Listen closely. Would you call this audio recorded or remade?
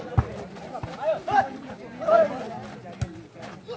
recorded